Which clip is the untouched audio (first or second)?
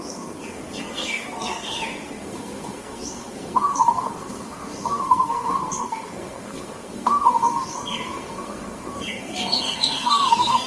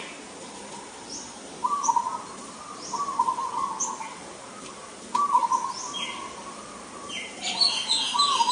second